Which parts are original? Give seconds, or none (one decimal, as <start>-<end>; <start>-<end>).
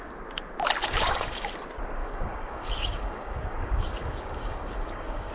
0.0-0.8; 1.5-2.0